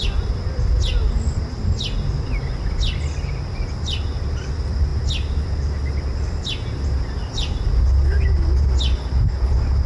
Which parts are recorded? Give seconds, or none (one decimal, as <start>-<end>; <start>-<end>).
0.0-9.9

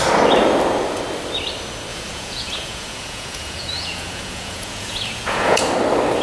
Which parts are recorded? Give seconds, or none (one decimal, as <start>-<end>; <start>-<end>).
0.0-1.9; 5.6-6.2

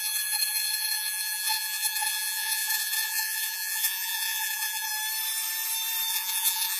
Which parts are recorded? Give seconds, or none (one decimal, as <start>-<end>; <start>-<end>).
4.9-6.1

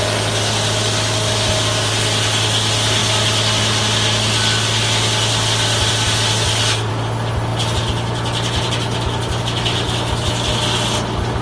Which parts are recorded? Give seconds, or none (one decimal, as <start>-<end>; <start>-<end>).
0.0-11.4

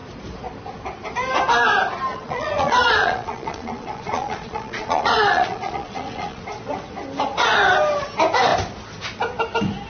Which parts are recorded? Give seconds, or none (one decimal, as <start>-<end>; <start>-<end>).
0.0-2.1; 6.4-9.9

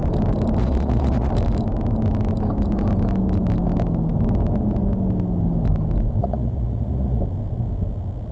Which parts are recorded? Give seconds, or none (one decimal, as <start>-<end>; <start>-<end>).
0.0-0.6; 1.3-6.2; 7.2-8.3